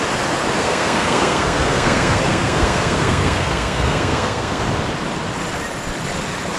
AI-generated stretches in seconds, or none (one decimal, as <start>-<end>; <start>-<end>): 0.6-4.6